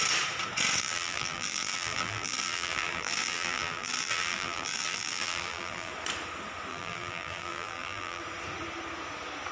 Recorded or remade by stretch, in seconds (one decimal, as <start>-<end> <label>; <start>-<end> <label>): 0.0-0.8 recorded; 0.8-5.9 remade; 5.9-6.7 recorded; 6.7-8.2 remade; 8.2-9.5 recorded